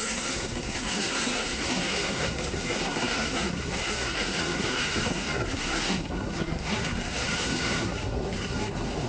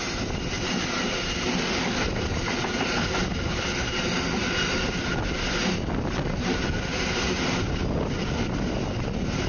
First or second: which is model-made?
first